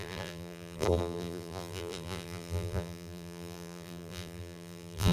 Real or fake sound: fake